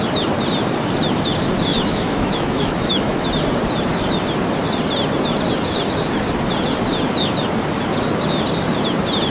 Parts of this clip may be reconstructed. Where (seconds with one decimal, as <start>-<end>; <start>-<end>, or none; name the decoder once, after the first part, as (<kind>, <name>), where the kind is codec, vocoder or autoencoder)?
1.7-3.3 (autoencoder, DAC-VAE)